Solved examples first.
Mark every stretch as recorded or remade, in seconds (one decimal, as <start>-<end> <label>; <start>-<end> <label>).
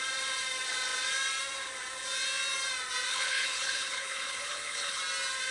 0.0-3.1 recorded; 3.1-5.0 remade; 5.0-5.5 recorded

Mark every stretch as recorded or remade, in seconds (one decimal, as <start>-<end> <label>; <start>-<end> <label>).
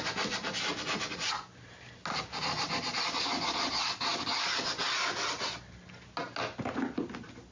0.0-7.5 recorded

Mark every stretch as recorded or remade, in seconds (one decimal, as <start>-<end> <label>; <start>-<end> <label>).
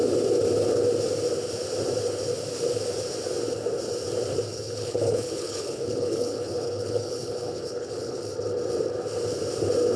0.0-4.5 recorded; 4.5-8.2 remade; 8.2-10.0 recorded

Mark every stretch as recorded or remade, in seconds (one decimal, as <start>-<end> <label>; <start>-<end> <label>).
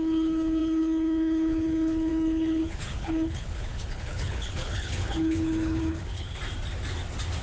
0.0-6.4 remade; 6.4-7.4 recorded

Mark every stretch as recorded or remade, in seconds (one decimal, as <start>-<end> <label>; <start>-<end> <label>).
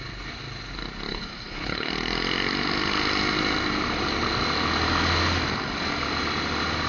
0.0-1.1 recorded; 1.1-1.9 remade; 1.9-6.9 recorded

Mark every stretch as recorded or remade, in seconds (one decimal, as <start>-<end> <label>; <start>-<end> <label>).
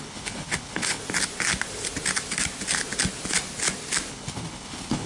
0.0-1.0 remade; 1.0-4.1 recorded; 4.1-5.1 remade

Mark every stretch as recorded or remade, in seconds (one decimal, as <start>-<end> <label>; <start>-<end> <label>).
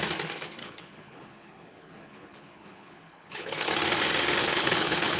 0.0-0.6 recorded; 0.6-3.7 remade; 3.7-4.4 recorded; 4.4-5.2 remade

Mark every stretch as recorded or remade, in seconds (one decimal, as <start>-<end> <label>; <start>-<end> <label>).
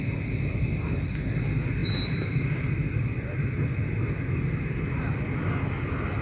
0.0-6.2 recorded